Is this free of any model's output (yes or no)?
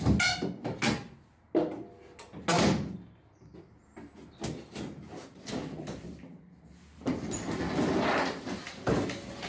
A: yes